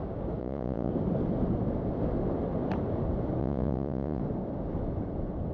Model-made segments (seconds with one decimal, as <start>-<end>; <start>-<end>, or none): 0.4-0.9; 3.4-4.2